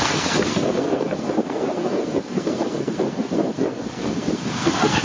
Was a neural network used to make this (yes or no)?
yes